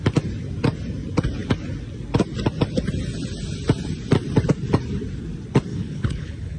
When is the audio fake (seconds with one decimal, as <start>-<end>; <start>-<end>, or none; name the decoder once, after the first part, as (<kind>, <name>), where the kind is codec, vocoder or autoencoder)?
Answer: 5.7-6.6 (codec, HILCodec)